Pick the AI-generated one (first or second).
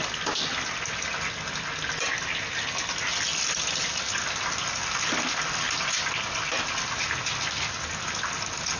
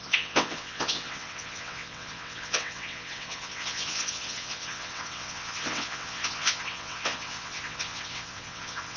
second